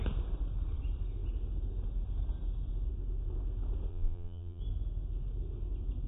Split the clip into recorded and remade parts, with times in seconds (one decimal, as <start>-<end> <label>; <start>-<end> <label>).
0.0-3.9 recorded; 3.9-4.6 remade; 4.6-6.1 recorded